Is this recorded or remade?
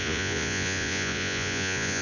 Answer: remade